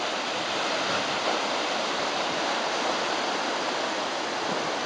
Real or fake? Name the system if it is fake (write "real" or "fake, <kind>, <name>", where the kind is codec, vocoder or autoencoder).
real